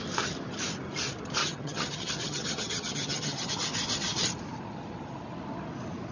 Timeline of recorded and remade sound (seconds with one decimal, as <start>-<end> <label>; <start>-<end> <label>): 0.0-1.4 recorded; 1.4-3.5 remade; 3.5-6.1 recorded